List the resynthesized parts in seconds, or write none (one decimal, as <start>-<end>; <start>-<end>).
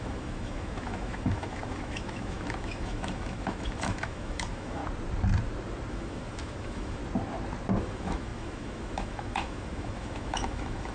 0.0-4.8; 5.9-7.0; 7.8-10.9